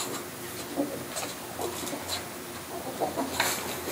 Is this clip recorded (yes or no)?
yes